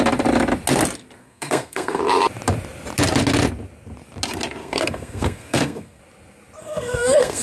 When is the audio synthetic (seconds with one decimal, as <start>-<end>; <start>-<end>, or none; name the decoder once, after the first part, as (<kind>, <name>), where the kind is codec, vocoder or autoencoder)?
1.2-2.0 (codec, SNAC); 4.6-6.0; 6.6-7.4

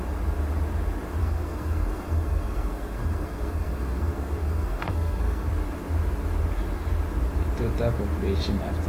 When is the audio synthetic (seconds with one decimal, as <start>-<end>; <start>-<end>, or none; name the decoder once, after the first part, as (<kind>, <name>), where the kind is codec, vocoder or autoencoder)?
1.2-5.5 (codec, SNAC)

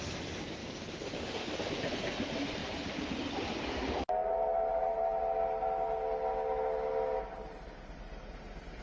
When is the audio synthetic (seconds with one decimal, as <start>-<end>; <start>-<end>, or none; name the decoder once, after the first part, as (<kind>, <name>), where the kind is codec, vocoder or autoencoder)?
none

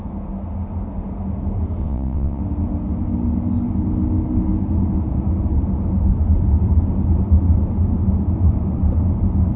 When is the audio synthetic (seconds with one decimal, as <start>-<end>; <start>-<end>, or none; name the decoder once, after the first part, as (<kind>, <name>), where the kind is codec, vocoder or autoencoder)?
1.8-2.4 (vocoder, WaveNeXt)

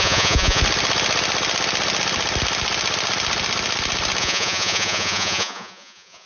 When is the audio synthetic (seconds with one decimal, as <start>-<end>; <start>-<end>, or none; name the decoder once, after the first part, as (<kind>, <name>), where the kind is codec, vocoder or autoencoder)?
0.0-0.6 (vocoder, Vocos); 4.2-6.3

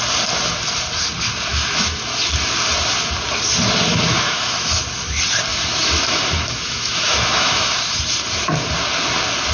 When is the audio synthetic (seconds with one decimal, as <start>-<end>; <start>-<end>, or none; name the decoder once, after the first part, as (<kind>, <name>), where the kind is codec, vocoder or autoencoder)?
1.5-2.0 (autoencoder, DAC-VAE); 4.1-4.8; 5.5-8.0

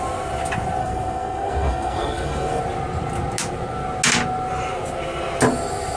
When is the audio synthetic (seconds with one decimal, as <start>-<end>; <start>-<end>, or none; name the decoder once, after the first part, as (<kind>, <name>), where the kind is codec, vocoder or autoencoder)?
0.8-2.6 (codec, SNAC)

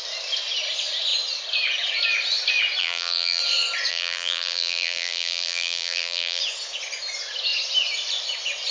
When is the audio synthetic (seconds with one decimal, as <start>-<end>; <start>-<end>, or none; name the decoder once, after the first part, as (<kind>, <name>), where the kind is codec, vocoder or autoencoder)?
2.8-3.4 (vocoder, BigVGAN v2); 3.9-6.4